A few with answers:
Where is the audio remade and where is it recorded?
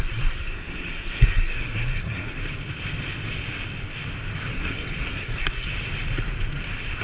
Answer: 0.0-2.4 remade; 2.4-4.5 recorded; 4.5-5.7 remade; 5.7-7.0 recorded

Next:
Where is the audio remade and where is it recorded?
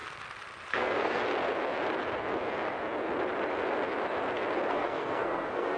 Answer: 0.0-0.7 recorded; 0.7-1.2 remade; 1.2-4.7 recorded; 4.7-5.8 remade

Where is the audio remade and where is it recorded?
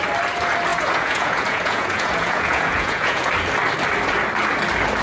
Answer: 0.0-0.7 recorded; 0.7-3.3 remade; 3.3-5.0 recorded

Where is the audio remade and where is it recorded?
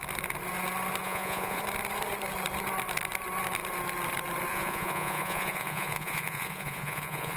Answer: 0.0-1.0 recorded; 1.0-1.6 remade; 1.6-4.5 recorded; 4.5-7.4 remade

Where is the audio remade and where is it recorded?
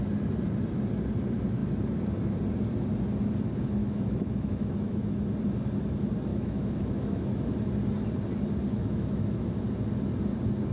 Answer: 0.0-3.8 recorded; 3.8-5.2 remade; 5.2-6.3 recorded; 6.3-7.4 remade; 7.4-8.7 recorded; 8.7-9.6 remade; 9.6-10.7 recorded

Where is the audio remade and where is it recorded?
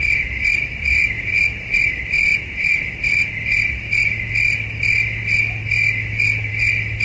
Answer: 0.0-7.0 recorded